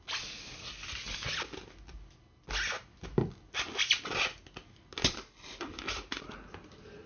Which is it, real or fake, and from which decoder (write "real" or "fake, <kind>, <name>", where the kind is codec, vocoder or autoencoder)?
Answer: real